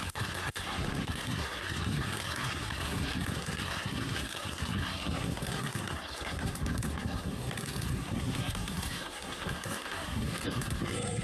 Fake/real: fake